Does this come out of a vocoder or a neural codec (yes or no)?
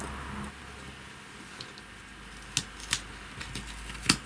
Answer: no